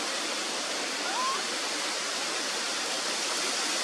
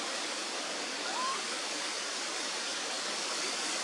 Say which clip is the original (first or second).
first